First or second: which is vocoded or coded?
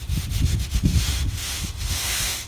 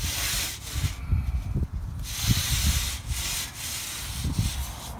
first